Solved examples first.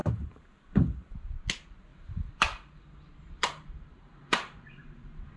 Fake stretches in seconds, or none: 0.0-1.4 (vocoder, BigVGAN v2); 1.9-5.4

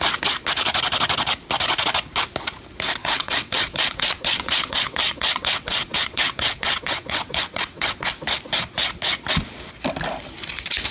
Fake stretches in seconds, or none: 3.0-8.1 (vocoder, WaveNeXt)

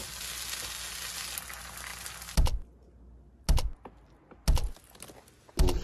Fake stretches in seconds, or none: none

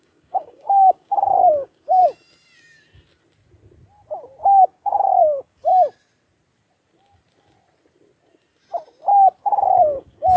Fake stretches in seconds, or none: 0.0-2.0 (codec, DAC); 4.6-5.7; 9.3-10.4